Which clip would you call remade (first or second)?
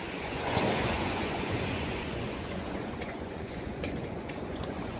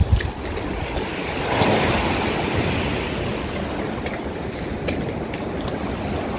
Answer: first